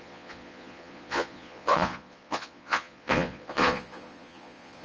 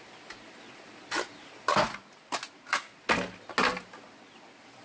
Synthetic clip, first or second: first